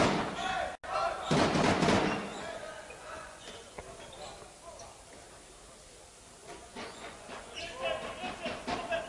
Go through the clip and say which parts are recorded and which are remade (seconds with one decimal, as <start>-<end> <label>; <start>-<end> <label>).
0.0-2.3 recorded; 2.3-3.8 remade; 3.8-6.4 recorded; 6.4-7.6 remade; 7.6-9.1 recorded